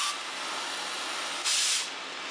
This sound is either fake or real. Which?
real